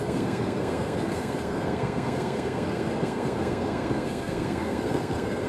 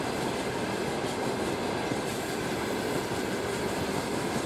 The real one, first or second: second